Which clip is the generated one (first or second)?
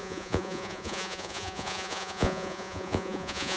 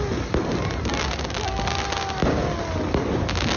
first